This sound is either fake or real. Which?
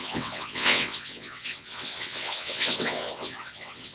fake